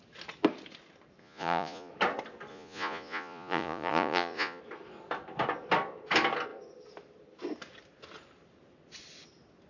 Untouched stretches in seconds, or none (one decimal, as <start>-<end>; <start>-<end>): 0.0-1.2; 1.9-2.5; 4.6-9.7